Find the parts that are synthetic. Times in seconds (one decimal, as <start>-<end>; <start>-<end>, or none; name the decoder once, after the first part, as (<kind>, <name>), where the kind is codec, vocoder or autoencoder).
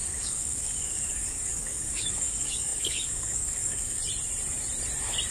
0.0-4.0 (codec, DAC)